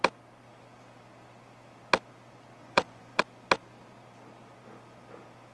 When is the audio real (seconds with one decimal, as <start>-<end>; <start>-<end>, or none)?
0.0-2.6; 3.2-5.5